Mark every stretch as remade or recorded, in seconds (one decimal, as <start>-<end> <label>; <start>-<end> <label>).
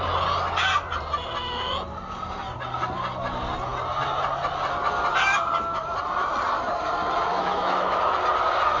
0.0-7.3 recorded; 7.3-8.0 remade; 8.0-8.8 recorded